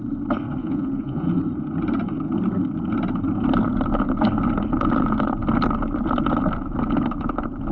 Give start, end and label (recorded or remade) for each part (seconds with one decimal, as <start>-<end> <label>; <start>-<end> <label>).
0.0-0.6 recorded; 0.6-1.4 remade; 1.4-7.7 recorded